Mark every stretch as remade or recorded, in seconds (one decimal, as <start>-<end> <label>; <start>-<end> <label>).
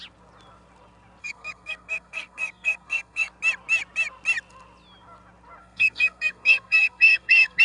0.0-1.2 recorded; 1.2-3.3 remade; 3.3-5.6 recorded; 5.6-7.6 remade